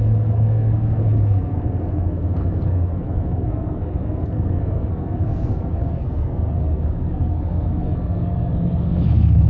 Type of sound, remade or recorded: remade